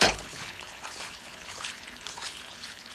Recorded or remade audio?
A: remade